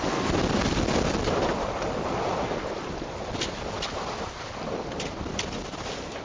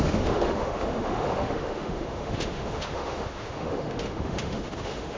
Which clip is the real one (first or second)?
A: first